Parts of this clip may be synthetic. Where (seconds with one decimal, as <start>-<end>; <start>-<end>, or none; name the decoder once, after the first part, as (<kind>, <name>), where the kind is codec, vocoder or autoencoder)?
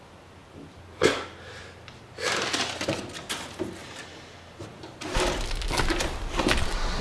none